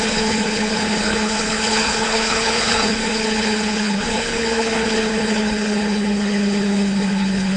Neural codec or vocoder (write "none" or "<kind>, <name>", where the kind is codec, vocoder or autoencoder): codec, HILCodec